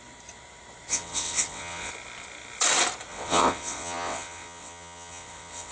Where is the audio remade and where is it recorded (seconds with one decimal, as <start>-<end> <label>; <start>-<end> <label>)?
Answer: 0.0-0.9 recorded; 0.9-1.9 remade; 1.9-3.1 recorded; 3.1-5.7 remade